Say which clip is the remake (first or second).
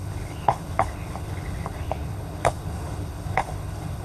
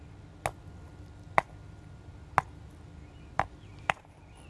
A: first